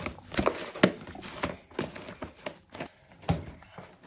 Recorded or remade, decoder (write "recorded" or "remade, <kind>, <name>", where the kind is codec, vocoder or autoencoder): recorded